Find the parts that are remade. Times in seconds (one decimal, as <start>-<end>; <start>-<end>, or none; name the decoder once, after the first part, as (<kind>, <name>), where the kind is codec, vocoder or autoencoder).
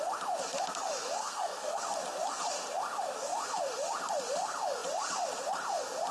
1.2-1.8 (codec, SNAC)